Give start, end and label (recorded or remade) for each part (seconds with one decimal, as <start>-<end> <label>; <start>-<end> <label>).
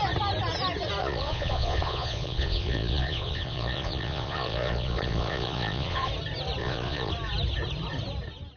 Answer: 0.0-1.0 recorded; 1.0-6.1 remade; 6.1-6.6 recorded; 6.6-7.1 remade; 7.1-8.6 recorded